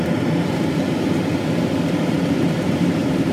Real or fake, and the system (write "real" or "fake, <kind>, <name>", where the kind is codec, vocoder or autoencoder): fake, vocoder, BigVGAN v2